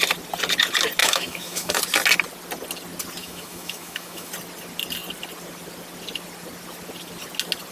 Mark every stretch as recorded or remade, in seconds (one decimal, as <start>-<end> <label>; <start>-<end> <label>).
0.0-1.0 recorded; 1.0-1.8 remade; 1.8-3.2 recorded; 3.2-4.3 remade; 4.3-7.7 recorded